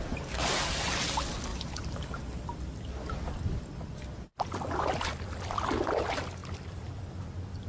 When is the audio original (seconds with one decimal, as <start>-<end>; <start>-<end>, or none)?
0.0-1.5; 2.2-7.7